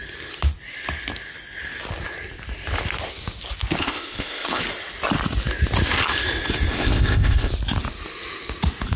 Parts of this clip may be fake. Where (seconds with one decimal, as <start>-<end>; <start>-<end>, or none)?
3.8-4.6; 6.7-7.5